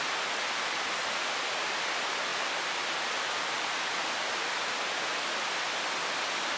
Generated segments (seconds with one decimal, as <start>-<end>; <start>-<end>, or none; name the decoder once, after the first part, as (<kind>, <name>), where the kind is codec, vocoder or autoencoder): none